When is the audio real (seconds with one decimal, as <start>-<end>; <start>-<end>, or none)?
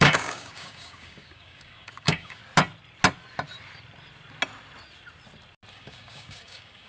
2.4-5.7